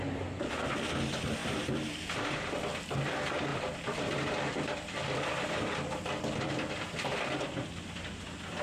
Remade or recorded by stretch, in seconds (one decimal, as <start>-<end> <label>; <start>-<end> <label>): 0.0-1.4 recorded; 1.4-2.4 remade; 2.4-3.5 recorded; 3.5-8.2 remade; 8.2-8.6 recorded